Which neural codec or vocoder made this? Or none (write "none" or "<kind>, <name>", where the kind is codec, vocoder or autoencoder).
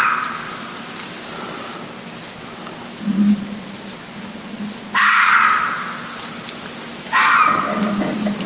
none